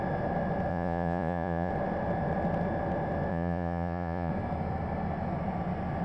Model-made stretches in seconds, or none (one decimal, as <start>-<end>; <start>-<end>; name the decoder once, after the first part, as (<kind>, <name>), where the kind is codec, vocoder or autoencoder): 0.7-1.7 (vocoder, Vocos); 3.3-4.3